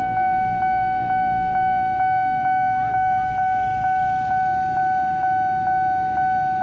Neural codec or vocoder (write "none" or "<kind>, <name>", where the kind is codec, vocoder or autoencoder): none